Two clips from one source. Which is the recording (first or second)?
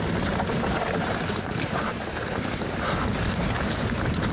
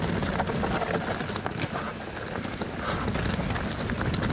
second